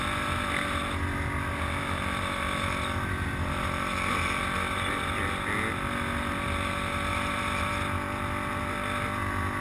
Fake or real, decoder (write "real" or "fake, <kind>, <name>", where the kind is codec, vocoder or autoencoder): real